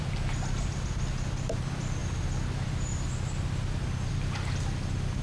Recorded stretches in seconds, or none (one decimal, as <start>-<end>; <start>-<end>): 0.0-5.2